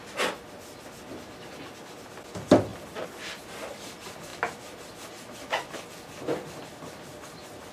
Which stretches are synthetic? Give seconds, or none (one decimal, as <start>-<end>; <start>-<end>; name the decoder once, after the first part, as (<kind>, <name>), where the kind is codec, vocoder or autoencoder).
none